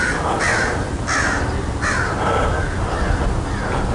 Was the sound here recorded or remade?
recorded